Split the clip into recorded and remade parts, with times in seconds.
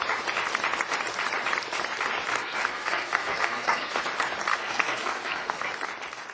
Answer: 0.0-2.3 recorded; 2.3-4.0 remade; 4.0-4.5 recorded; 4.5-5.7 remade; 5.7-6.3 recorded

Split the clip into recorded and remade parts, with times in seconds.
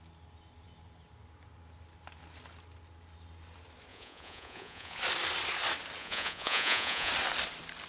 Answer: 0.0-3.9 recorded; 3.9-5.0 remade; 5.0-6.0 recorded; 6.0-7.1 remade; 7.1-7.9 recorded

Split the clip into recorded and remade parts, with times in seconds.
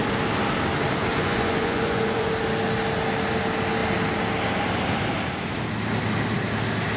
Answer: 0.0-1.1 recorded; 1.1-2.3 remade; 2.3-7.0 recorded